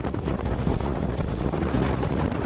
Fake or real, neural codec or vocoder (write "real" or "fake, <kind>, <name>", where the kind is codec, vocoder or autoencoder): fake, vocoder, Vocos